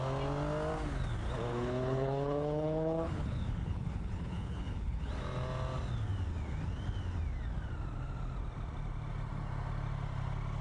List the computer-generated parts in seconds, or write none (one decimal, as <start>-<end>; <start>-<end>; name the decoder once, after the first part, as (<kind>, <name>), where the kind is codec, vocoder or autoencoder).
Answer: 1.5-5.1 (codec, HILCodec)